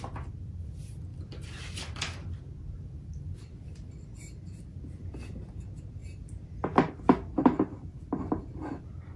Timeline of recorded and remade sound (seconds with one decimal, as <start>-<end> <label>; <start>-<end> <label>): 0.0-1.1 recorded; 1.1-5.2 remade; 5.2-6.0 recorded; 6.0-6.9 remade; 6.9-9.2 recorded